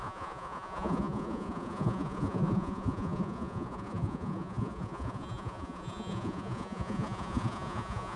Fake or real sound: fake